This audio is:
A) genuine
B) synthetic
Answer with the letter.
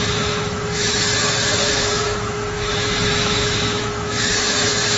B